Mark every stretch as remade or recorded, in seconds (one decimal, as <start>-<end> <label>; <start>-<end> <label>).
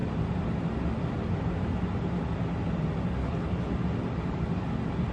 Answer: 0.0-3.2 recorded; 3.2-3.7 remade; 3.7-5.1 recorded